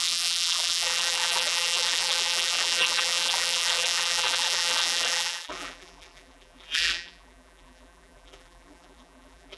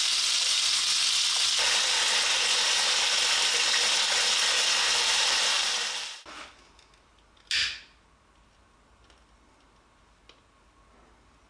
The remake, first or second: first